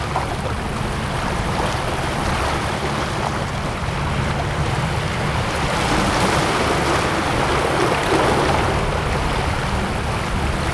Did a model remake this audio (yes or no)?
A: no